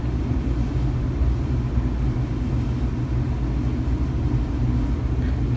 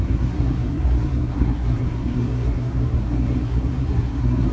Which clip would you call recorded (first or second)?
first